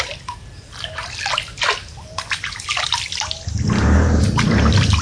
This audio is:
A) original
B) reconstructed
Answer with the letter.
A